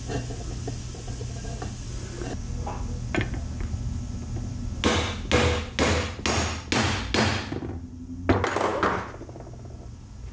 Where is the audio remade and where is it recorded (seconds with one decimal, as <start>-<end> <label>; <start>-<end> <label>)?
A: 0.0-10.3 recorded